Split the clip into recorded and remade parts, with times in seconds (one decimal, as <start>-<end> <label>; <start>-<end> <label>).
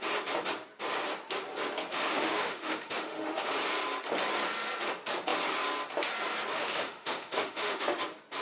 0.0-1.9 recorded; 1.9-3.5 remade; 3.5-6.5 recorded; 6.5-8.0 remade; 8.0-8.4 recorded